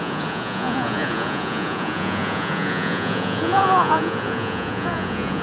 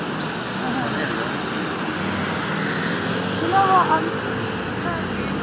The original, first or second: second